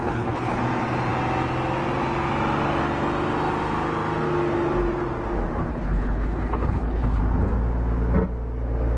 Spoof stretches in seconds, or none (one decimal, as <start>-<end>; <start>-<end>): 0.0-0.6; 5.7-7.2

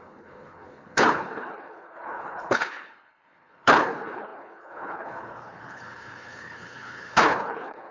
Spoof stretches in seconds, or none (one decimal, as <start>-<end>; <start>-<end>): 0.0-7.9

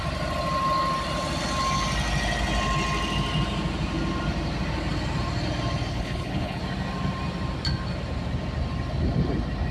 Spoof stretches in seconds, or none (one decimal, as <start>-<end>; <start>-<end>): 5.9-6.6

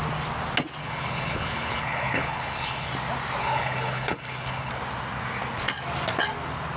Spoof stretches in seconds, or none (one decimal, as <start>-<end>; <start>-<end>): 0.8-2.9; 3.4-4.7

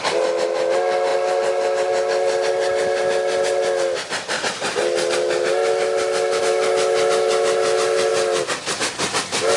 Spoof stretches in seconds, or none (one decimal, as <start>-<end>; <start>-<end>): none

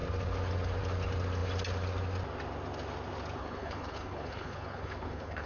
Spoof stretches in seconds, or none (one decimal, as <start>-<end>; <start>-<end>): 3.4-5.5